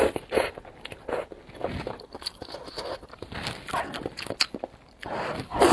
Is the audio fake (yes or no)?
no